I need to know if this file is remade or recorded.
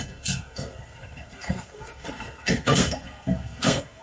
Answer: remade